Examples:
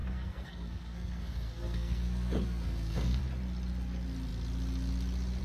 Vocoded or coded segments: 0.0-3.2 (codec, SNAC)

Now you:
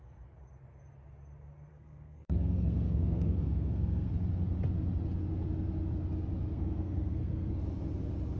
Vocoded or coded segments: 1.7-4.1 (codec, SNAC); 6.5-7.5